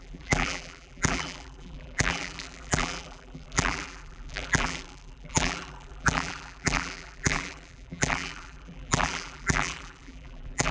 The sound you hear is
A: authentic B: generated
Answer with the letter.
B